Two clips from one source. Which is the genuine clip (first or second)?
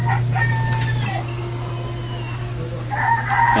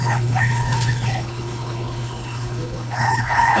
first